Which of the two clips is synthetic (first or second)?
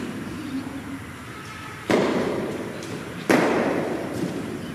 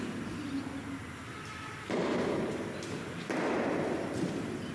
first